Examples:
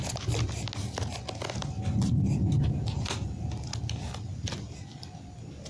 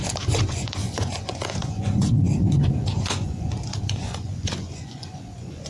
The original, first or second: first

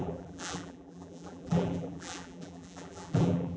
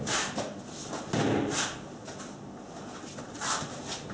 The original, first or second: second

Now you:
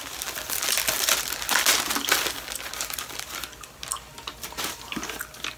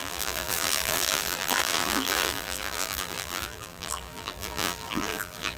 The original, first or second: first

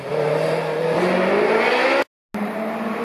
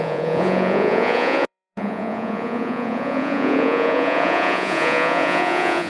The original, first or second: first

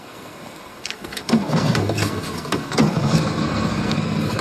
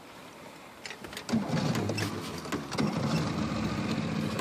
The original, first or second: second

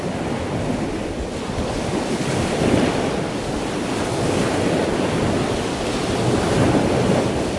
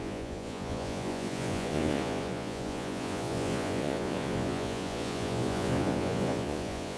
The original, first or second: first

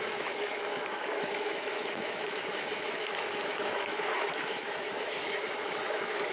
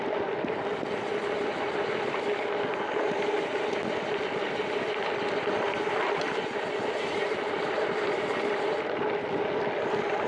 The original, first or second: second